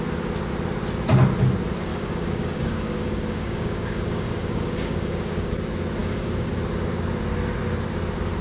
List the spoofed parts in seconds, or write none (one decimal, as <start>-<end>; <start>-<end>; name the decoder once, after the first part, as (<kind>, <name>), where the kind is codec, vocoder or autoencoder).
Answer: 1.9-5.5 (codec, DAC); 6.0-6.5